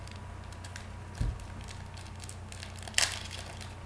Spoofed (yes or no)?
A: no